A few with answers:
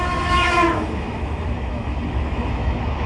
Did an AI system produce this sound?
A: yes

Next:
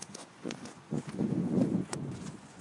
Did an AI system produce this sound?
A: yes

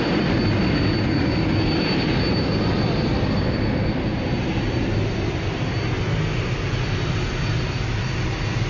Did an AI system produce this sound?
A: no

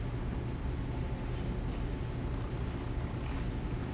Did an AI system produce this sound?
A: no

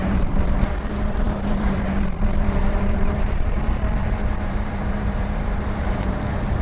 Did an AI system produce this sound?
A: yes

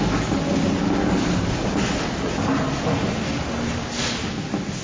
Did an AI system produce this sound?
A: no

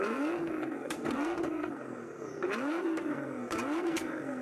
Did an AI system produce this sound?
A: yes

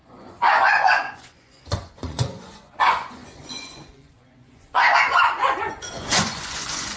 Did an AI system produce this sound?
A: yes